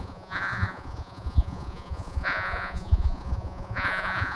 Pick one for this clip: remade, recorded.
remade